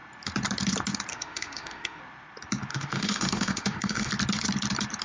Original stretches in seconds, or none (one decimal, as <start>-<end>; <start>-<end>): 0.0-1.1; 2.0-2.7; 4.1-5.0